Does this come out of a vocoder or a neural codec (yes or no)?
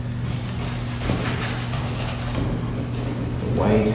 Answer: no